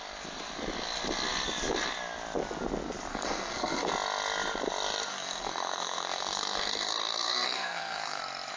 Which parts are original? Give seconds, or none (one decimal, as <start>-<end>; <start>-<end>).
0.0-3.1; 3.9-5.1; 8.2-8.6